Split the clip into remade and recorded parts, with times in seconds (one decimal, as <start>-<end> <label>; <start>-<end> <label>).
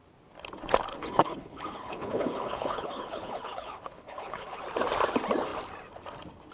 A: 0.0-0.9 recorded; 0.9-4.6 remade; 4.6-6.5 recorded